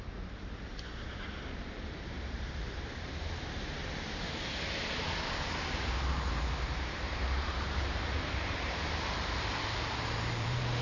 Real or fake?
fake